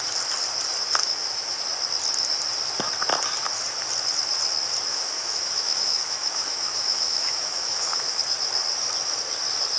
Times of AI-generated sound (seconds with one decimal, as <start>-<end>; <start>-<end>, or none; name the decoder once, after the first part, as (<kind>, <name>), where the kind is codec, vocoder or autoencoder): 1.0-1.6 (autoencoder, DAC-VAE); 4.9-8.2